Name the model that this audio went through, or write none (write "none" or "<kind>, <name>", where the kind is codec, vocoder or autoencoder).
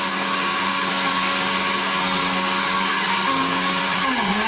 codec, DAC